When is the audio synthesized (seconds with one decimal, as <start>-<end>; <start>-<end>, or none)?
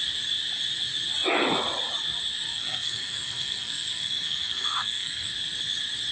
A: 2.5-5.3